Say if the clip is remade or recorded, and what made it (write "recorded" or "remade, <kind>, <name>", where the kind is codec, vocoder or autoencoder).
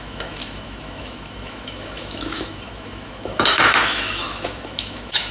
remade, autoencoder, DAC-VAE